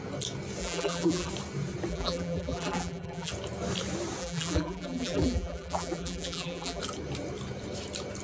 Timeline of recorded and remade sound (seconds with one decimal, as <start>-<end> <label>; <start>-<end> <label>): 0.0-0.6 recorded; 0.6-1.3 remade; 1.3-1.9 recorded; 1.9-3.3 remade; 3.3-4.2 recorded; 4.2-6.8 remade; 6.8-8.2 recorded